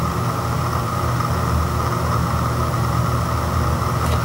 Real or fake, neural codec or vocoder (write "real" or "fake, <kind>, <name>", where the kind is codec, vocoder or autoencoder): real